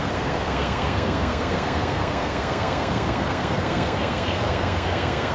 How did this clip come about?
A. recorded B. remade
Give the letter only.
B